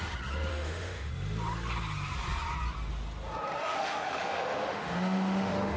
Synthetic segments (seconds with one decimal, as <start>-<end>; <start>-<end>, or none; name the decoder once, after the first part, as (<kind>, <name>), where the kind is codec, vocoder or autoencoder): 0.5-1.1 (autoencoder, DAC-VAE); 3.6-5.8